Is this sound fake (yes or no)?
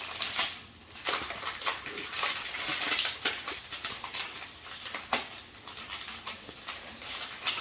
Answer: no